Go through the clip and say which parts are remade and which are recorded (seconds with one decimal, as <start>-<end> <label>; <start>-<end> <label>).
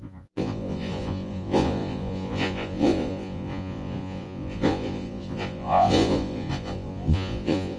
0.0-7.8 remade